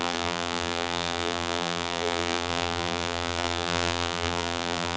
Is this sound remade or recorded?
remade